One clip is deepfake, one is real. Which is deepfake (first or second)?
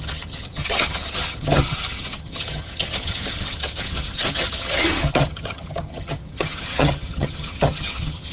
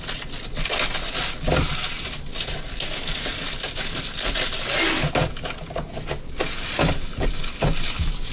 first